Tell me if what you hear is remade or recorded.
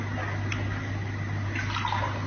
recorded